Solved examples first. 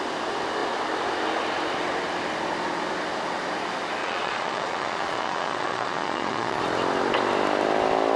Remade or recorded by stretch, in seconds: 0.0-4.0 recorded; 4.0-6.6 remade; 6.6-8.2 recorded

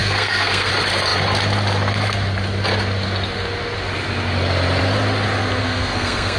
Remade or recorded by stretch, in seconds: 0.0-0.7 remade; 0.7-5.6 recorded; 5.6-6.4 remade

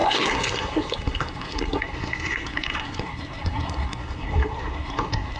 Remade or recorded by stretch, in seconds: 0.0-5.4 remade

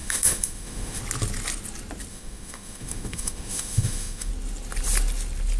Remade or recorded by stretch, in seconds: 0.0-1.0 remade; 1.0-2.1 recorded; 2.1-4.3 remade; 4.3-5.6 recorded

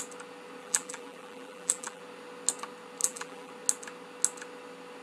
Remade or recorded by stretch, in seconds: 0.0-0.6 recorded; 0.6-2.0 remade; 2.0-3.0 recorded; 3.0-3.5 remade; 3.5-5.0 recorded